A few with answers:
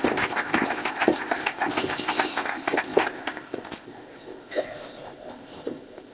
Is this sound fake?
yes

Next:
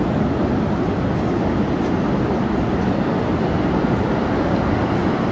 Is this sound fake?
no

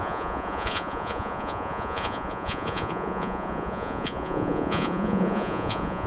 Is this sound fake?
yes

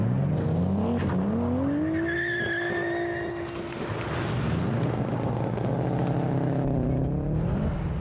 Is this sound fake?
no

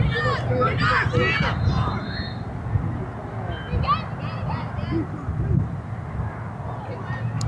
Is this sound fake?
no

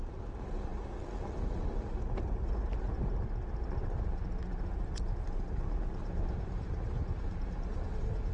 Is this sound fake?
no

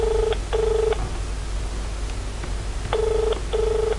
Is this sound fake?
no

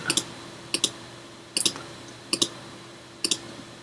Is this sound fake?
no